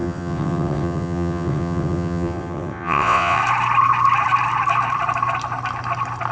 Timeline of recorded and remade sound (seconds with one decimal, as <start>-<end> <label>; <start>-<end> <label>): 0.0-3.4 remade; 3.4-6.3 recorded